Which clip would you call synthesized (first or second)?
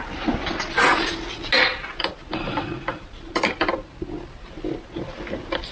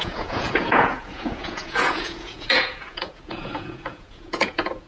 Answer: second